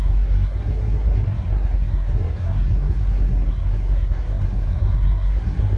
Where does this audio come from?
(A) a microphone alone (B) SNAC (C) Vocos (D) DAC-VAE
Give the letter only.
B